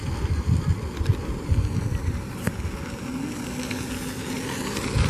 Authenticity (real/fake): real